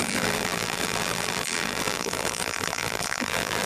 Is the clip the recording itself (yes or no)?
no